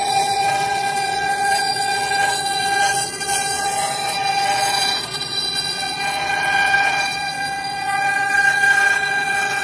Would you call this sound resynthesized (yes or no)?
yes